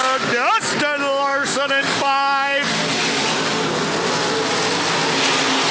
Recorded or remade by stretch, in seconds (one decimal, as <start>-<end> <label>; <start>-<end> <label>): 0.0-1.3 recorded; 1.3-2.7 remade; 2.7-5.7 recorded